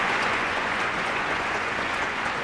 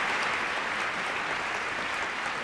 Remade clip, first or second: first